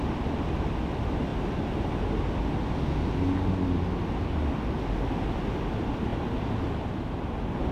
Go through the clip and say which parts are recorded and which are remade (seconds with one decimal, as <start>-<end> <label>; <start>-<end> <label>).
0.0-7.7 recorded